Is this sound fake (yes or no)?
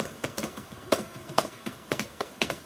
yes